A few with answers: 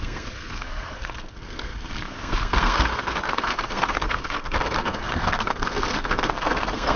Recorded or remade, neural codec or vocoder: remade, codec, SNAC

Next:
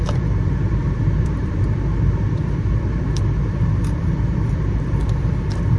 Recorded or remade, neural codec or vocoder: remade, vocoder, BigVGAN v2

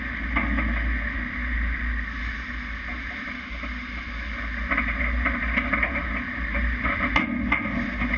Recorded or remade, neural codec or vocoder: recorded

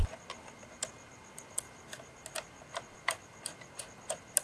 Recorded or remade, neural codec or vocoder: recorded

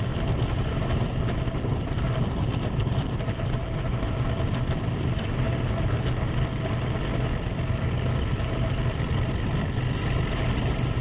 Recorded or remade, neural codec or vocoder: recorded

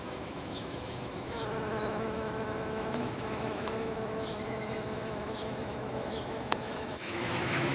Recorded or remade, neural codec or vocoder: remade, autoencoder, DAC-VAE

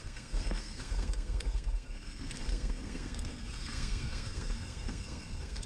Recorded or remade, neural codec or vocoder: remade, codec, SNAC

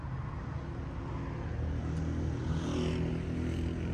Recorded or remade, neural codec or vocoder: recorded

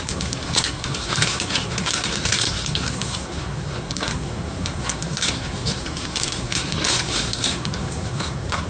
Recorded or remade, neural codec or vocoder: remade, codec, SNAC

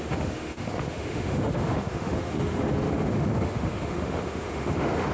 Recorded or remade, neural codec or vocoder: remade, autoencoder, DAC-VAE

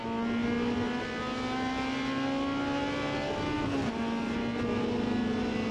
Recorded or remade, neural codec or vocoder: recorded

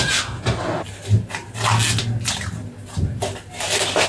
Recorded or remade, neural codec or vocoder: recorded